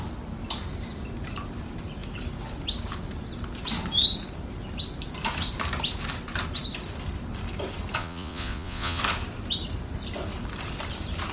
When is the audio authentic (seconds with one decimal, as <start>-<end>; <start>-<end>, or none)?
0.0-8.0; 9.0-11.3